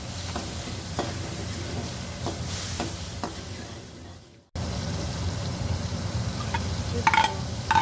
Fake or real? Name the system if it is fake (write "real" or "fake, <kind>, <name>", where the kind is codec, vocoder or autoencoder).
real